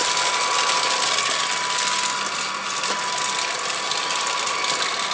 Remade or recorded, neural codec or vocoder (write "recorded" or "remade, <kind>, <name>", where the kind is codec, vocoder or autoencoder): recorded